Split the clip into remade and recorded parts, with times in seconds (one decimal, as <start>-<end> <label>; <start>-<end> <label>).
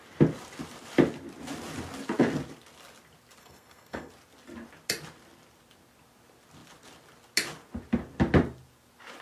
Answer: 0.0-3.4 recorded; 3.4-4.1 remade; 4.1-9.2 recorded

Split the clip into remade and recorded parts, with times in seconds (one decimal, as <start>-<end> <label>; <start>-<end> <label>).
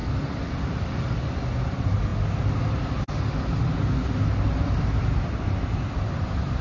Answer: 0.0-2.1 remade; 2.1-4.4 recorded; 4.4-6.6 remade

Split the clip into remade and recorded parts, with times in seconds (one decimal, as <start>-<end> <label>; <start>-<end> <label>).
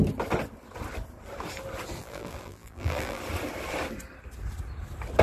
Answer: 0.0-2.0 recorded; 2.0-3.2 remade; 3.2-5.2 recorded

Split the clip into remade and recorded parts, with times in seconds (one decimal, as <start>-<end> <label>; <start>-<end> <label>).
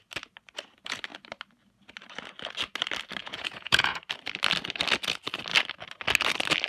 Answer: 0.0-3.2 recorded; 3.2-4.0 remade; 4.0-6.7 recorded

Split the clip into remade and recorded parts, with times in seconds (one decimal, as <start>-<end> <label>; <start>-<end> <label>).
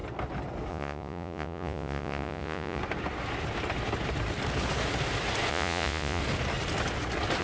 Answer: 0.0-0.7 recorded; 0.7-2.8 remade; 2.8-5.5 recorded; 5.5-6.2 remade; 6.2-7.4 recorded